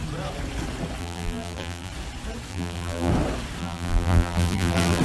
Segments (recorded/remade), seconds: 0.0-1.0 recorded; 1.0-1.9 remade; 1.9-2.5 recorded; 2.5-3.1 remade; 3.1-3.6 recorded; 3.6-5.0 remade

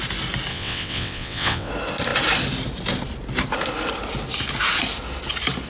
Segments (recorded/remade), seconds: 0.0-0.5 recorded; 0.5-1.7 remade; 1.7-5.7 recorded